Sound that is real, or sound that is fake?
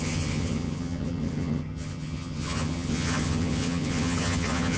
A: fake